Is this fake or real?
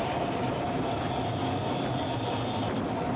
real